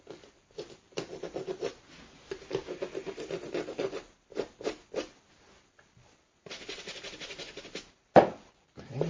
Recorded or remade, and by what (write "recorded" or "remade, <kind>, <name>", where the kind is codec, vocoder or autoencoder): recorded